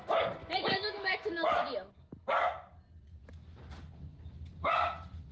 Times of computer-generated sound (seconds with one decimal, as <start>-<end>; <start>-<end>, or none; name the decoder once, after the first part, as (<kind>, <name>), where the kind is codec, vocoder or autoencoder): 0.4-1.9 (autoencoder, DAC-VAE)